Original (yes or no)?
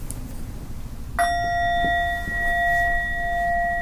yes